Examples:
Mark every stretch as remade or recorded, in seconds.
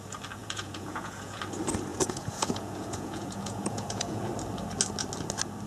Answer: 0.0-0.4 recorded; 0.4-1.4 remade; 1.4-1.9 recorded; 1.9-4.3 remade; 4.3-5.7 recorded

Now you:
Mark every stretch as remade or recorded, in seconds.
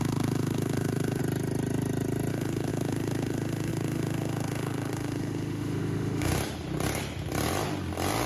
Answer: 0.0-1.2 remade; 1.2-2.3 recorded; 2.3-6.3 remade; 6.3-8.3 recorded